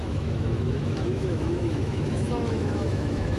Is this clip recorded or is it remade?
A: remade